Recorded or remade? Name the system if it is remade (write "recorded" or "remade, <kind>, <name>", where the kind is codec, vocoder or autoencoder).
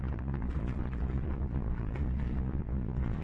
remade, vocoder, Vocos